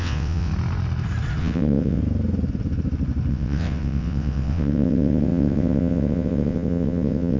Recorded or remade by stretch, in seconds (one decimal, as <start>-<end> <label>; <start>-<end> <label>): 0.0-0.5 remade; 0.5-1.4 recorded; 1.4-2.0 remade; 2.0-3.3 recorded; 3.3-7.4 remade

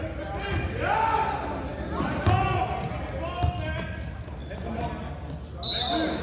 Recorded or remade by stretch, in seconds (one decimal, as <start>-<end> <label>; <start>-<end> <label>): 0.0-6.2 recorded

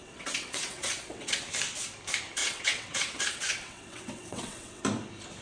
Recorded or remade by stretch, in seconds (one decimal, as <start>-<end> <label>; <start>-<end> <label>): 0.0-1.4 remade; 1.4-2.4 recorded; 2.4-4.8 remade; 4.8-5.4 recorded

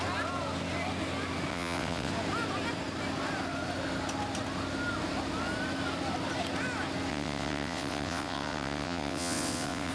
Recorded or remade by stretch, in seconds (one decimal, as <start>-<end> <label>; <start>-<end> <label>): 0.0-1.5 recorded; 1.5-2.1 remade; 2.1-7.1 recorded; 7.1-9.9 remade

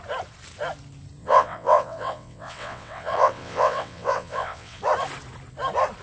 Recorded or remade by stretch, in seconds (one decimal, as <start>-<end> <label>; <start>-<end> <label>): 0.0-1.2 recorded; 1.2-4.8 remade; 4.8-6.0 recorded

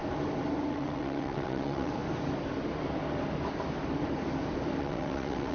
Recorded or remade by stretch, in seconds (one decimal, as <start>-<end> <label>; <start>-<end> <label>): 0.0-0.7 recorded; 0.7-1.9 remade; 1.9-4.8 recorded; 4.8-5.5 remade